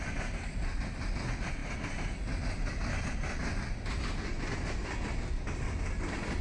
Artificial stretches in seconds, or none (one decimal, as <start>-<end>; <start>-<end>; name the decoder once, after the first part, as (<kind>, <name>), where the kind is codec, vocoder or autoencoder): none

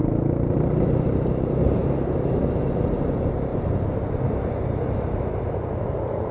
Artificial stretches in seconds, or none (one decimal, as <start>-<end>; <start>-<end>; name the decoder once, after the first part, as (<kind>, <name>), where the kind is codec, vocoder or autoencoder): 0.0-2.1 (vocoder, BigVGAN v2); 3.5-4.1; 5.3-5.8

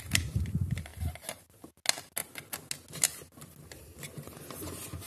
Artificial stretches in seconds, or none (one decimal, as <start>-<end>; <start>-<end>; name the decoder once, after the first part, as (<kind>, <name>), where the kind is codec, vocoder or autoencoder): none

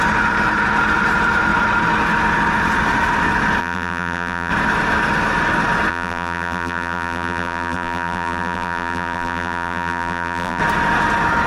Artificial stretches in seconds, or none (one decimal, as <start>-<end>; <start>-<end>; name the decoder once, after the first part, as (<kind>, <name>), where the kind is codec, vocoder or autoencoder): 3.6-4.5 (vocoder, BigVGAN v2); 5.9-10.6

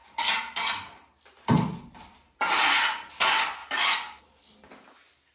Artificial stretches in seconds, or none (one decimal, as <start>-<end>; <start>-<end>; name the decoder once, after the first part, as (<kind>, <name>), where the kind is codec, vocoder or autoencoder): 3.6-4.2 (vocoder, BigVGAN v2)

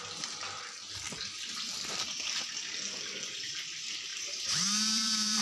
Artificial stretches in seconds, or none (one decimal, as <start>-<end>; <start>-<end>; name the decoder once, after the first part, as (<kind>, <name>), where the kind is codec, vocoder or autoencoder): 4.1-5.4 (vocoder, BigVGAN v2)